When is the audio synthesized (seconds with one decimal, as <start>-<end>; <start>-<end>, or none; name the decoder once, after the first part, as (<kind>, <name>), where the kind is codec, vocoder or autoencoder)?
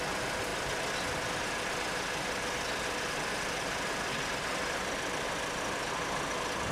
none